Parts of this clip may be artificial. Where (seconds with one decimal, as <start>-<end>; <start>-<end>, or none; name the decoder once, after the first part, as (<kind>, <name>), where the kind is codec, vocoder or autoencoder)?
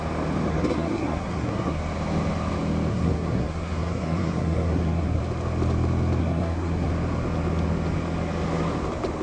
0.5-1.8 (codec, SNAC); 2.9-5.2; 6.2-6.9